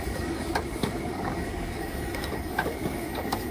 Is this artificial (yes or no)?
yes